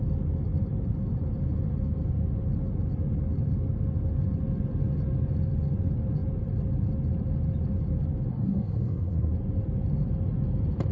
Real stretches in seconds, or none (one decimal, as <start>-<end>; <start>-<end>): 0.0-8.3; 9.3-10.9